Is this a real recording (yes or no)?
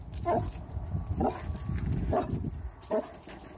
yes